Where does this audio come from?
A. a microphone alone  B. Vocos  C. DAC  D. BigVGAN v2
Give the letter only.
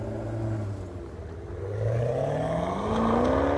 A